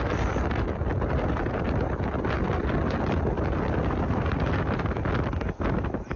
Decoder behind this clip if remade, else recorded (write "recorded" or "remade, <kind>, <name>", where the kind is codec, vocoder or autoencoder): recorded